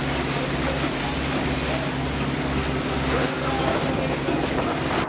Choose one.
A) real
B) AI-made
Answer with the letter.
A